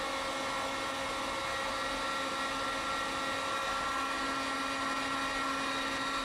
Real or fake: real